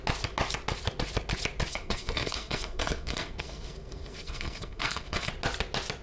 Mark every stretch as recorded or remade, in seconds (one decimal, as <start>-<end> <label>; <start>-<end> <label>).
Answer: 0.0-1.7 recorded; 1.7-5.3 remade; 5.3-6.0 recorded